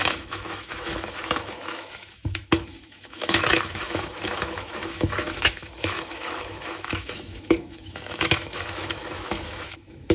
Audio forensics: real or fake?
fake